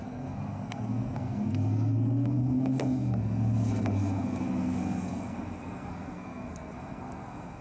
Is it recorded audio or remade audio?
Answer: remade